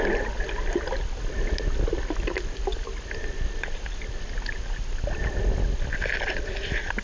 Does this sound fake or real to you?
real